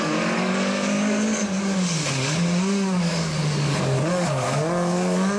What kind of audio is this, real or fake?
fake